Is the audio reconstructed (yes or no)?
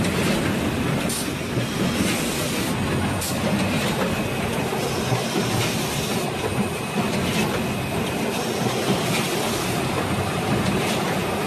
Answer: no